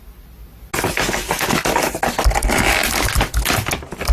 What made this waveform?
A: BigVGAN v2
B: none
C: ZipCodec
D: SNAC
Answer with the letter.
B